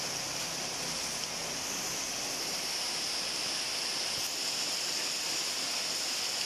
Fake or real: real